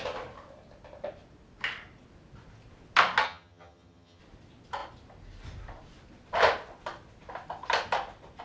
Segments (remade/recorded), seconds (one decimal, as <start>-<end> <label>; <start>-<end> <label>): 0.0-3.2 recorded; 3.2-4.2 remade; 4.2-8.4 recorded